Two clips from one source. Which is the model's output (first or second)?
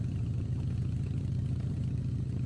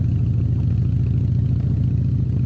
first